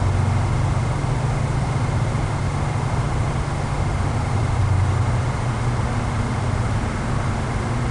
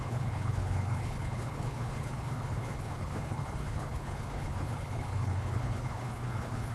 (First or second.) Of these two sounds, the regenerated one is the second